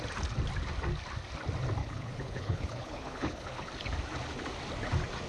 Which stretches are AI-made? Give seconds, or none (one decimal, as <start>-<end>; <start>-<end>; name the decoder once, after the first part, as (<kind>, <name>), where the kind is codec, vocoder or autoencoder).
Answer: 1.8-3.7 (codec, HILCodec)